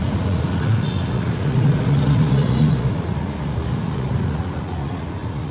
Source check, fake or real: fake